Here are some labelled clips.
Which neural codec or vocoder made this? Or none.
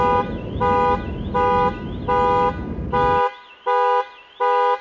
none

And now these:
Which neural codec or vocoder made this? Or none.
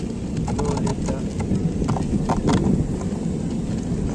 none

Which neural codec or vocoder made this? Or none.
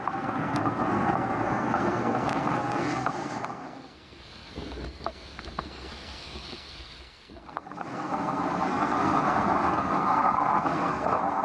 codec, SNAC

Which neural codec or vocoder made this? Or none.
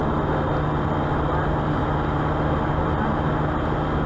none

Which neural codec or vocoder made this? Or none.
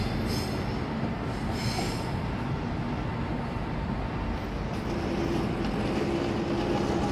none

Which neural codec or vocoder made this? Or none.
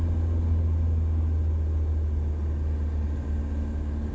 none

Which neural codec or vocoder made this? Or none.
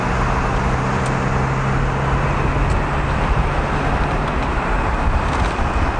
none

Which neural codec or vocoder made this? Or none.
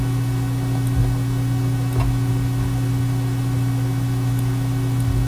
none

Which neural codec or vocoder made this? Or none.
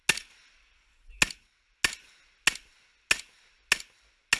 none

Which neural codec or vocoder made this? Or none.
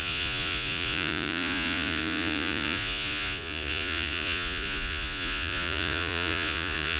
vocoder, Vocos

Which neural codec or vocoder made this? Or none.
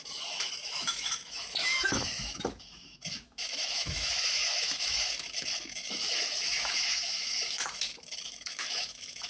autoencoder, DAC-VAE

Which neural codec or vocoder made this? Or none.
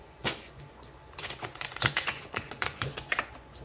vocoder, Vocos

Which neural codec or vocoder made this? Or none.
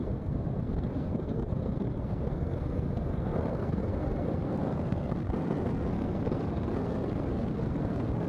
codec, SNAC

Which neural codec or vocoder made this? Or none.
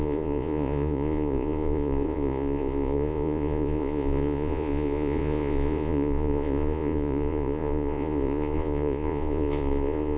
vocoder, Vocos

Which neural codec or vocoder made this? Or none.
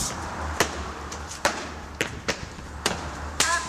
vocoder, BigVGAN v2